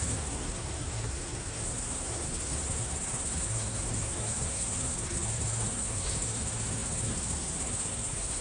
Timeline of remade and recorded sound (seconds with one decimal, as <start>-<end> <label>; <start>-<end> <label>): 0.0-8.4 remade